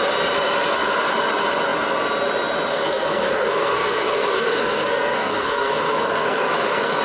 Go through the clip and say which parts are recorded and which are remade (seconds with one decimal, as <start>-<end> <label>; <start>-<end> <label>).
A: 0.0-2.7 recorded; 2.7-7.0 remade